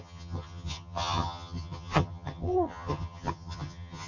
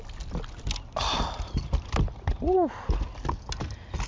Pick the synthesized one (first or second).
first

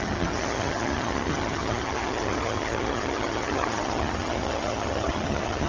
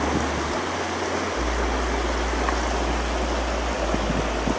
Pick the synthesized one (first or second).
first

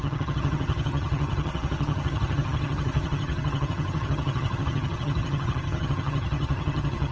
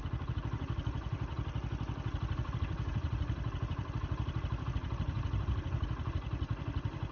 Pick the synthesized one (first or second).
first